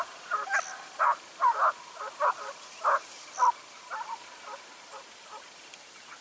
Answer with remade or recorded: recorded